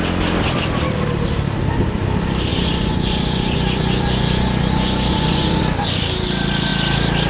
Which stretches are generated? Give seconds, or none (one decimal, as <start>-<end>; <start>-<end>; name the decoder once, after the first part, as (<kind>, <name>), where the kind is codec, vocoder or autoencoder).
2.5-5.6 (vocoder, Vocos)

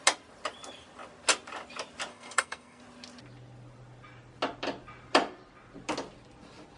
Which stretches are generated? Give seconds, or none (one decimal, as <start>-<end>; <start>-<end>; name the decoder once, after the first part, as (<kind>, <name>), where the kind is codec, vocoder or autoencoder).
2.1-2.8 (codec, SNAC)